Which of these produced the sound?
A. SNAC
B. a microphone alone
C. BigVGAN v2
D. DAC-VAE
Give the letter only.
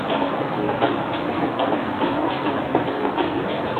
A